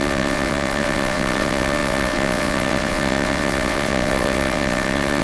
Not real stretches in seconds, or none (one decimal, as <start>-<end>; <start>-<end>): 0.0-5.2